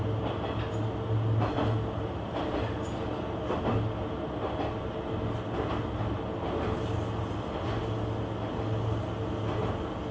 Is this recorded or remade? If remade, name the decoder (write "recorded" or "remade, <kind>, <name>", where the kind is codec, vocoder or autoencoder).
recorded